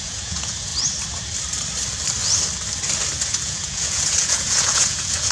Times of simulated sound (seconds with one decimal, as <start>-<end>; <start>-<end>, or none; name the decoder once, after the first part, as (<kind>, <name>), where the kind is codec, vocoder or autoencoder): 0.0-0.7 (vocoder, Vocos); 3.2-5.3